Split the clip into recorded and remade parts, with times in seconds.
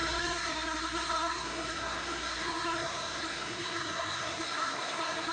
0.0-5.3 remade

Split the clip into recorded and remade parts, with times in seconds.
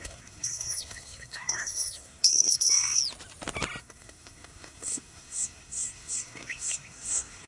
0.0-3.0 remade; 3.0-3.8 recorded; 3.8-7.5 remade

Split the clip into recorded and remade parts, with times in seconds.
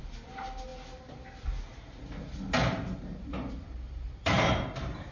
0.0-5.1 recorded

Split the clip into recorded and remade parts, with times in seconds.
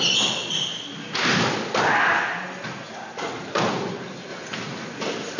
0.0-5.4 recorded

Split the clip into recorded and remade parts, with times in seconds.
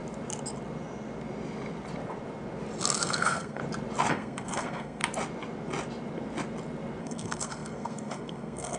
0.0-3.0 recorded; 3.0-3.6 remade; 3.6-4.1 recorded; 4.1-5.0 remade; 5.0-7.0 recorded; 7.0-8.8 remade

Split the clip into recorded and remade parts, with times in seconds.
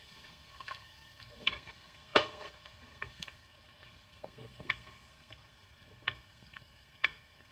0.0-7.5 remade